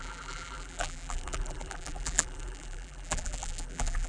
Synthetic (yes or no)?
yes